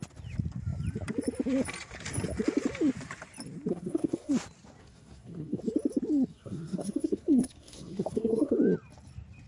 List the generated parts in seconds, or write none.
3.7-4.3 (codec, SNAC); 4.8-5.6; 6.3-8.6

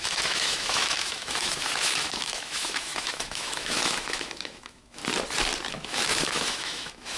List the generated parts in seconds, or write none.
0.0-5.0 (autoencoder, DAC-VAE); 5.7-7.2

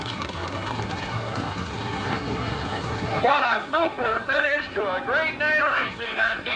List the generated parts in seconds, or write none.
0.0-4.8 (codec, SNAC); 5.6-6.6

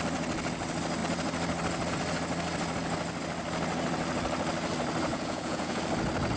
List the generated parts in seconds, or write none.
5.1-5.8 (vocoder, Vocos)

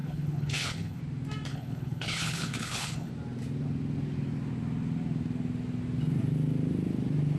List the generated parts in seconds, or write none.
0.0-1.0 (codec, HILCodec); 1.5-3.1